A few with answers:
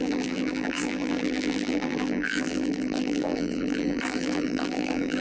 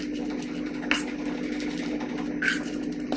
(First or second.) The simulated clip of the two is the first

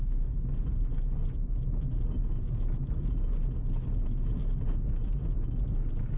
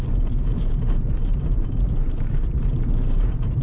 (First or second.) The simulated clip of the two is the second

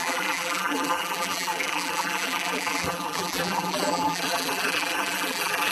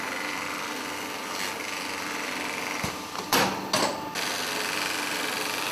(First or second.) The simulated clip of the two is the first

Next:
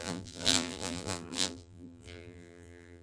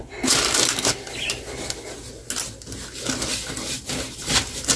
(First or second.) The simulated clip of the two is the first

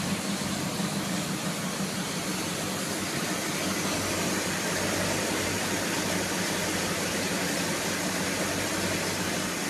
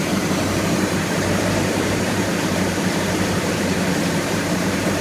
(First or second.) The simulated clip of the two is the second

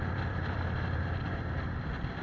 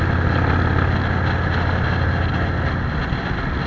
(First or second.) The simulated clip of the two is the first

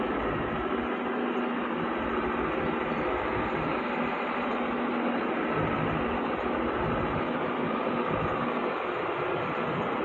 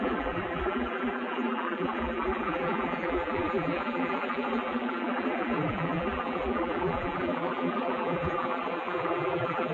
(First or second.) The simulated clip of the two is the second